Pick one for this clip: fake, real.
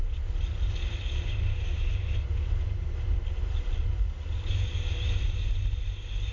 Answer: real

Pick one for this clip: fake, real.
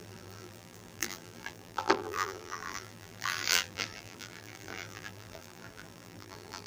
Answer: fake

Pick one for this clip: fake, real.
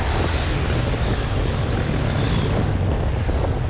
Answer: real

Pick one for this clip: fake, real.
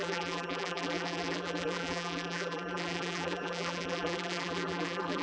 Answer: fake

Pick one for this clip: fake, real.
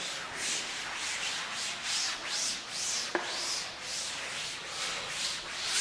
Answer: real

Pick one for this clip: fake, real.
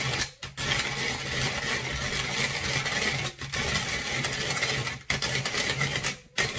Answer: real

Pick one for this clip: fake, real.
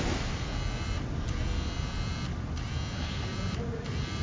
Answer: fake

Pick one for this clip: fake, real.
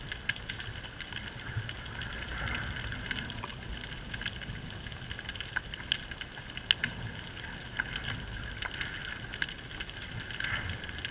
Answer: real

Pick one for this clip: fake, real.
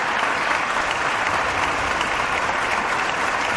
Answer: fake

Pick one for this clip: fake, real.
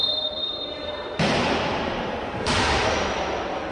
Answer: fake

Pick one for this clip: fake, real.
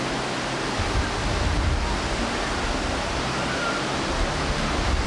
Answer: real